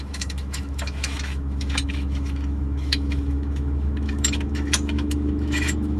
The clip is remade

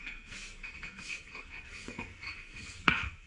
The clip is remade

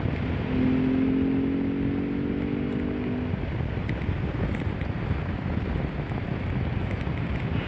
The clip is recorded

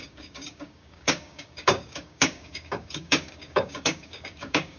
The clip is remade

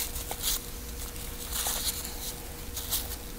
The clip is recorded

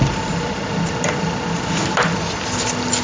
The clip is recorded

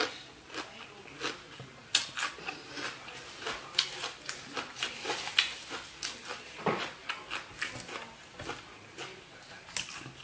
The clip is recorded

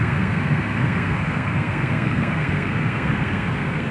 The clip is remade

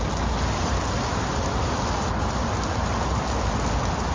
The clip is recorded